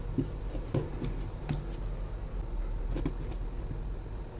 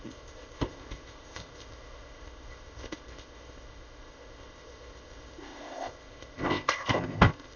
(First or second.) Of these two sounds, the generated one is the second